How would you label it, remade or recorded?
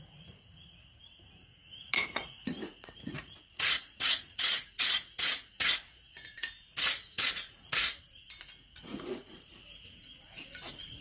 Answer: remade